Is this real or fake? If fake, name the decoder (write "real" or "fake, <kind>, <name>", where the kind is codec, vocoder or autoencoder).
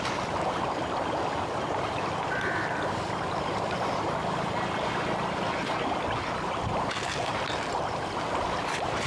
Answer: real